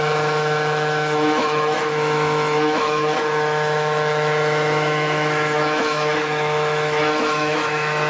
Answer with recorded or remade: remade